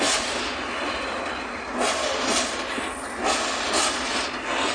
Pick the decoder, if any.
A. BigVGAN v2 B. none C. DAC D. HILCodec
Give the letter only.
B